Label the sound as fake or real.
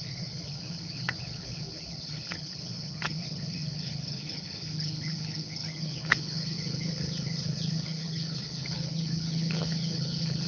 fake